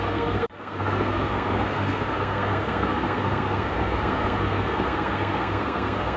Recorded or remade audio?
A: remade